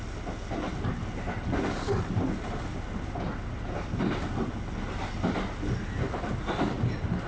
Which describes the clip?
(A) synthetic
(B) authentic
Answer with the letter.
B